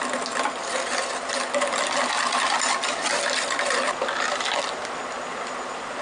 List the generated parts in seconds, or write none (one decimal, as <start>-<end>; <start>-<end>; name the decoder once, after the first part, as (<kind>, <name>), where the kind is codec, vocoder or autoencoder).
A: none